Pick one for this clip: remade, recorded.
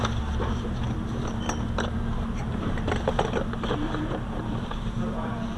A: remade